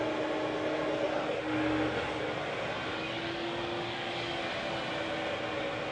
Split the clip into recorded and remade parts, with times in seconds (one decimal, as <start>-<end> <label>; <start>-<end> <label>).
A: 0.0-2.9 recorded; 2.9-4.5 remade; 4.5-5.9 recorded